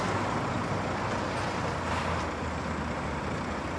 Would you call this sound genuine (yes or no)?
yes